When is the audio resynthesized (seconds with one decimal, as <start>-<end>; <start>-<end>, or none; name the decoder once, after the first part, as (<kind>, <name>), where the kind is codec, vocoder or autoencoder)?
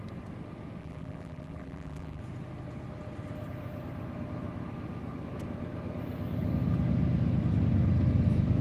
0.8-2.2 (vocoder, BigVGAN v2)